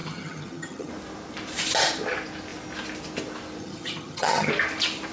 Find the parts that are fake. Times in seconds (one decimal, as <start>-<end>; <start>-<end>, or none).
0.0-0.9; 3.6-4.5